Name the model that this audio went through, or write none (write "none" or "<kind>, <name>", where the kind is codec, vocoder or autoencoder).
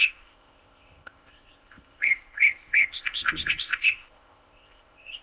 codec, ZipCodec